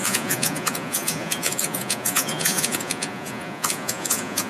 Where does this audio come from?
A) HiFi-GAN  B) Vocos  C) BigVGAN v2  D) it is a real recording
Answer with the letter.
B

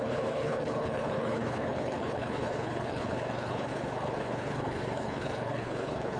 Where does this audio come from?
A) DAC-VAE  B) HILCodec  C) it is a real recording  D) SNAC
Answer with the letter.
B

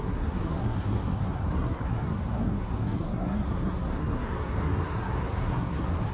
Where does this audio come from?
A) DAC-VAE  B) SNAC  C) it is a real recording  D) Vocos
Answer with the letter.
B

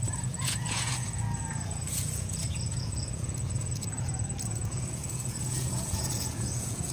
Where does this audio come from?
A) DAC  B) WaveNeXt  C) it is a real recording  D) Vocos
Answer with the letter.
D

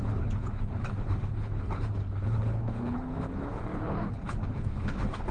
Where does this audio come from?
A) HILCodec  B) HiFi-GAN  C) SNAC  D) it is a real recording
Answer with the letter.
A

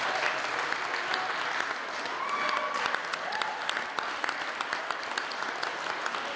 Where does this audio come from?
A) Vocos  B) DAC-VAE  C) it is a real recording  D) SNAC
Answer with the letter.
C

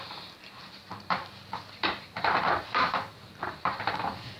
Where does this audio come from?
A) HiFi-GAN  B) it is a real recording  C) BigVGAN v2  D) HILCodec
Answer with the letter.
C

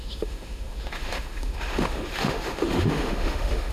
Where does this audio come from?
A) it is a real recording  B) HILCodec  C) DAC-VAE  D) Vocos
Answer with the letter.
C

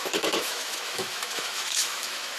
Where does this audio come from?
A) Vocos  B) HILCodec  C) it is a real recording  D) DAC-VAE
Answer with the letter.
D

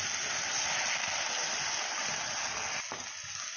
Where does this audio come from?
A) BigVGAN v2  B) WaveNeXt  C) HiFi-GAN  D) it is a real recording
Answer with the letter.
D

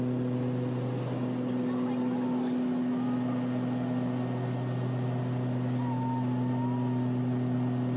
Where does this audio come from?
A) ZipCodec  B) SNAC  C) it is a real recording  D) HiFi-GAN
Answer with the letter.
C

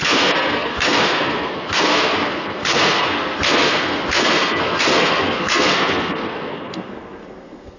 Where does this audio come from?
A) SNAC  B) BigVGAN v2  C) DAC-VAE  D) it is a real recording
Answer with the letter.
A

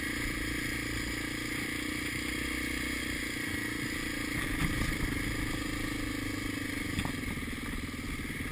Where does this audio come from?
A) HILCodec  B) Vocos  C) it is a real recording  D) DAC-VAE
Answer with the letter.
C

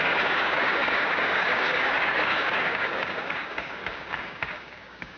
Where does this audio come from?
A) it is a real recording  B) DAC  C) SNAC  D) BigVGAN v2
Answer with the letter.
B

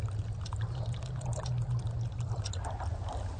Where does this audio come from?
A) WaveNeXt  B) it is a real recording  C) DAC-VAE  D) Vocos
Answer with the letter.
B